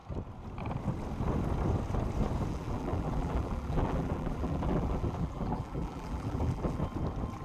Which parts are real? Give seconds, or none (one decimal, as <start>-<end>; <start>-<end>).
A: 0.0-2.5; 6.8-7.4